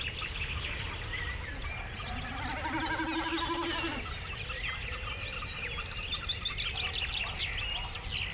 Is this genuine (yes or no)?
yes